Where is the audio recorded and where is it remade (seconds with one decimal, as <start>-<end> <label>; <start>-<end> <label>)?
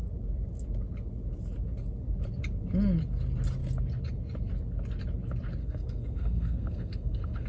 0.0-5.6 recorded; 5.6-7.5 remade